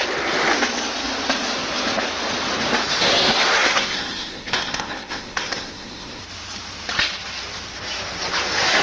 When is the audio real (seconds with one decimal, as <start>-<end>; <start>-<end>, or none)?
0.0-3.7; 6.2-8.8